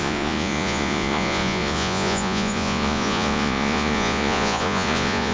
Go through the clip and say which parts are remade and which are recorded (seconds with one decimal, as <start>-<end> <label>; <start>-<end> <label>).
0.0-5.3 remade